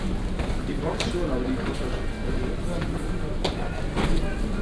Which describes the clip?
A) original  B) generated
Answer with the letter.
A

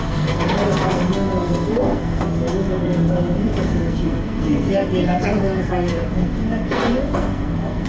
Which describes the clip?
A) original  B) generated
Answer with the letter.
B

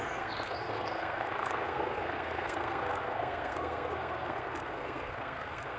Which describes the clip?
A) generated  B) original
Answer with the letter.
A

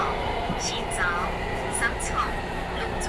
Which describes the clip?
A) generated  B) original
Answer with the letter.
B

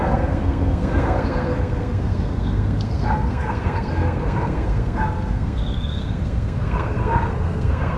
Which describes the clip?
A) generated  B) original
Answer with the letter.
A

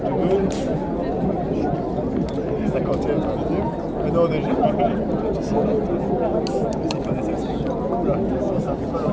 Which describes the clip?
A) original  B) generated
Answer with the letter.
A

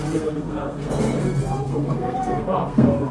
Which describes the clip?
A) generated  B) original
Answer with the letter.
A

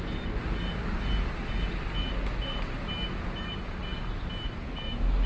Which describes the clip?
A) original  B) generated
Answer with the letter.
A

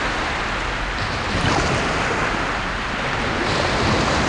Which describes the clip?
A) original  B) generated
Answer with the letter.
A